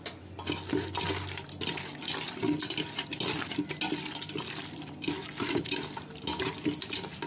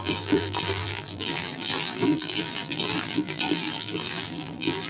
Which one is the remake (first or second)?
second